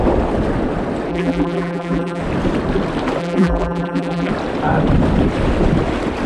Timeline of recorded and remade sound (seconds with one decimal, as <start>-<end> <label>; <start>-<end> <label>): 0.0-1.1 recorded; 1.1-2.2 remade; 2.2-3.2 recorded; 3.2-4.3 remade; 4.3-6.3 recorded